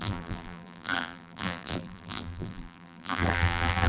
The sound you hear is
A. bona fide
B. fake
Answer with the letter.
B